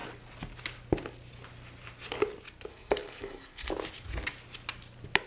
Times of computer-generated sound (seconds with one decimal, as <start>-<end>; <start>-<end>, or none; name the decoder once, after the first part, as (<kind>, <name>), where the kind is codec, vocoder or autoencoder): 2.7-3.7 (codec, SNAC)